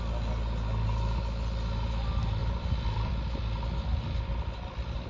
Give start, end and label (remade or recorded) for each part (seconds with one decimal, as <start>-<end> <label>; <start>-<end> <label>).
0.0-2.4 recorded; 2.4-3.1 remade; 3.1-3.9 recorded; 3.9-5.1 remade